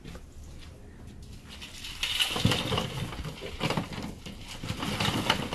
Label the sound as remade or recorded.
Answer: recorded